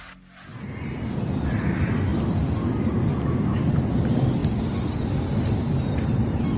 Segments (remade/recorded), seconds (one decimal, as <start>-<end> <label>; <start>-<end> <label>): 0.0-4.4 recorded; 4.4-4.9 remade; 4.9-6.6 recorded